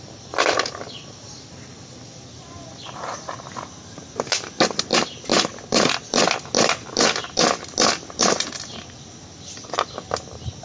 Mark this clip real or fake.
real